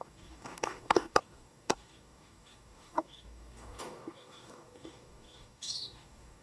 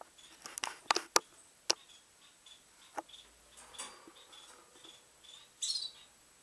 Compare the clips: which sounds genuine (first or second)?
second